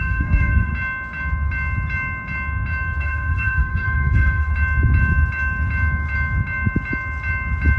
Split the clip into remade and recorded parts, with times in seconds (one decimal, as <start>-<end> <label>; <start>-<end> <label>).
0.0-0.7 remade; 0.7-3.0 recorded; 3.0-4.5 remade; 4.5-7.8 recorded